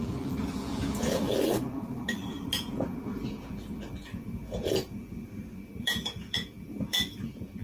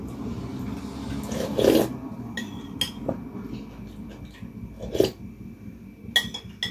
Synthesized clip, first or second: first